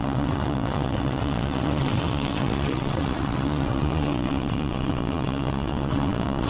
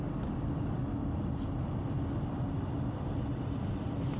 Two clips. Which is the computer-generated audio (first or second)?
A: first